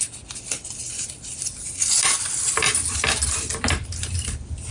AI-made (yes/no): yes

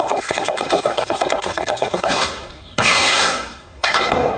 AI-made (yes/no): yes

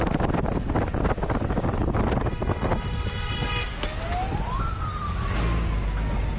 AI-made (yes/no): no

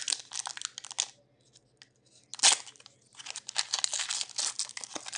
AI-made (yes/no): no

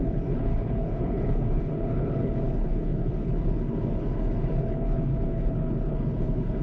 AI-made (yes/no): yes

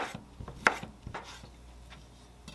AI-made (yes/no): no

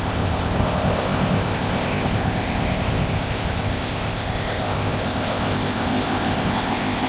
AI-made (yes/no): yes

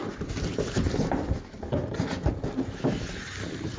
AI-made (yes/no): no